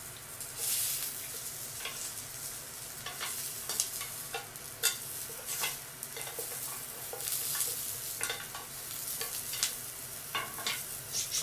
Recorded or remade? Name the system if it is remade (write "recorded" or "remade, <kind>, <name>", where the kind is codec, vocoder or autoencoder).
recorded